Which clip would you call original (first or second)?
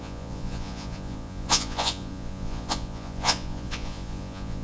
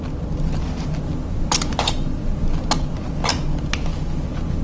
second